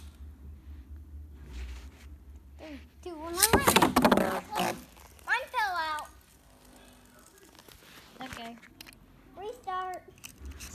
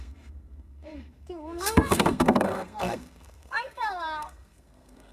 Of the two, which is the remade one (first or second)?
second